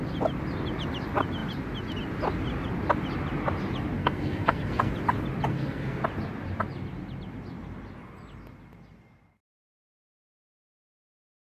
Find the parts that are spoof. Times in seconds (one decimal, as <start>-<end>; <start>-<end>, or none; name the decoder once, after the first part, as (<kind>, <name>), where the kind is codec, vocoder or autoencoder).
4.0-4.9 (codec, SNAC); 5.5-6.0